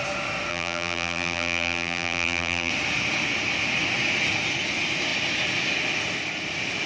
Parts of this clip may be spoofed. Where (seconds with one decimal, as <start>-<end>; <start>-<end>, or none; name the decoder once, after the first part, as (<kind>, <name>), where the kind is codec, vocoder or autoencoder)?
0.5-2.7 (vocoder, BigVGAN v2)